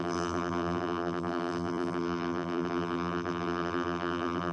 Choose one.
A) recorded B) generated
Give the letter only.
B